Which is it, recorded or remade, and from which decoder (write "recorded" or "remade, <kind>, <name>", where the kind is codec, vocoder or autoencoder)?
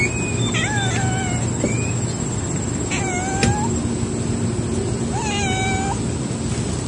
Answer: recorded